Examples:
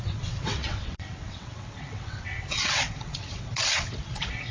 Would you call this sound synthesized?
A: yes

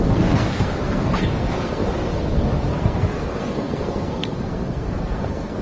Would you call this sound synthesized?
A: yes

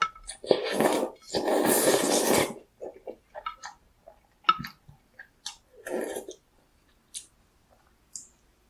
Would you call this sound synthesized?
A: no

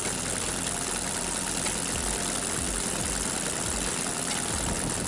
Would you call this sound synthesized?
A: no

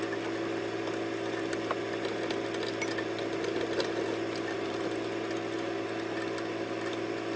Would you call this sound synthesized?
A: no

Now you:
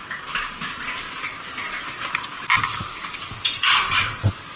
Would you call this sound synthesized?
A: no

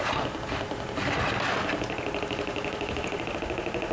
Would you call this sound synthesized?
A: no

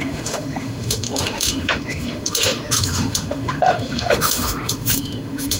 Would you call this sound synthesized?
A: yes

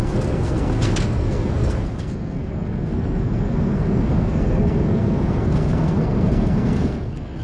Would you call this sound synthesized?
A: yes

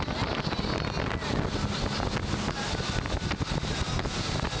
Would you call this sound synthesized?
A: no